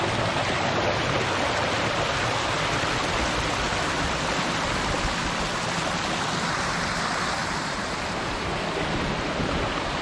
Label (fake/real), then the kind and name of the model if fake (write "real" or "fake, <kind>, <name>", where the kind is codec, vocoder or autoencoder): real